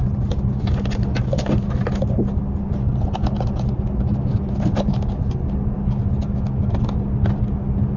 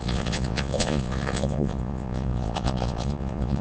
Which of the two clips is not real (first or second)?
second